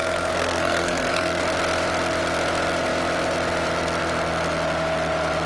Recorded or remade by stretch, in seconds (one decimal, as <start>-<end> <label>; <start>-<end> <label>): 0.0-1.4 remade; 1.4-5.5 recorded